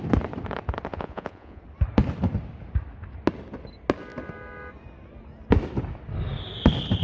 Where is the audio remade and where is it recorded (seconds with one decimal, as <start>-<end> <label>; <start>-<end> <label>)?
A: 0.0-0.9 recorded; 0.9-1.6 remade; 1.6-7.0 recorded